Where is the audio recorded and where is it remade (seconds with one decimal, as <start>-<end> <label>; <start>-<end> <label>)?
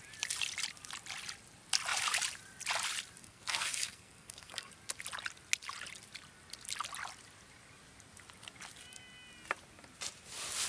0.0-3.2 recorded; 3.2-4.7 remade; 4.7-10.7 recorded